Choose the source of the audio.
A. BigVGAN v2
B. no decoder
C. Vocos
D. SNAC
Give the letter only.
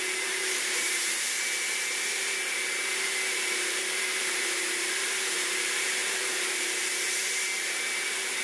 A